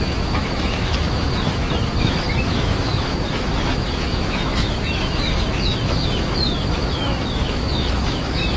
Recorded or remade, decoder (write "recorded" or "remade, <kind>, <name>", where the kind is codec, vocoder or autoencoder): remade, autoencoder, DAC-VAE